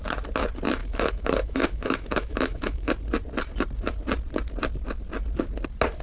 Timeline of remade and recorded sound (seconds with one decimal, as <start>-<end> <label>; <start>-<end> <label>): 0.0-0.8 recorded; 0.8-2.9 remade; 2.9-6.0 recorded